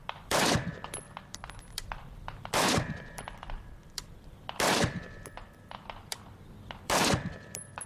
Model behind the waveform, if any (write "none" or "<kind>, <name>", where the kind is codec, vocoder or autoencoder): vocoder, BigVGAN v2